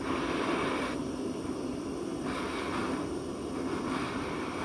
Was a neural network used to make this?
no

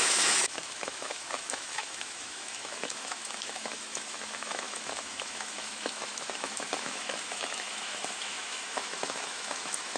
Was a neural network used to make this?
yes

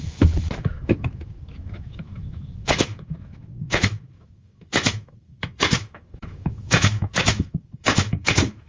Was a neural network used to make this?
yes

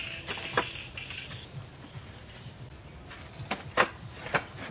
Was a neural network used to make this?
no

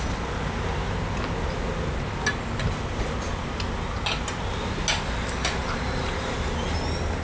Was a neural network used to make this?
no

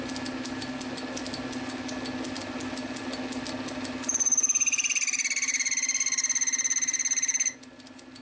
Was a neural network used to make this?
no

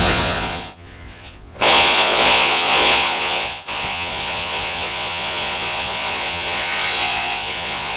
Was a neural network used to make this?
yes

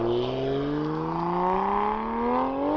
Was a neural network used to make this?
no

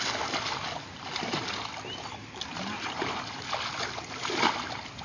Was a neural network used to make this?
no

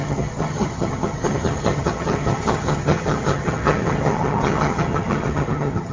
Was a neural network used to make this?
yes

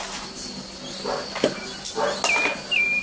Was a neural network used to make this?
no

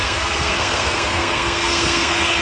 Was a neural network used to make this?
yes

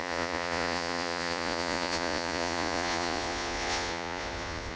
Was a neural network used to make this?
yes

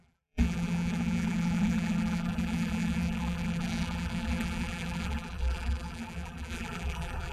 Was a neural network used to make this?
yes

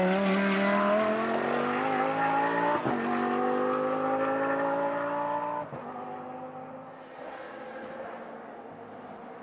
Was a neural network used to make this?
no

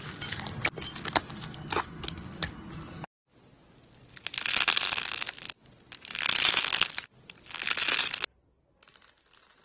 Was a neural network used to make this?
no